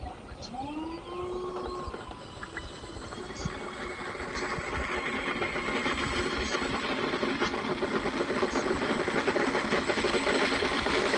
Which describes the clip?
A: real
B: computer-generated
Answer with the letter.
A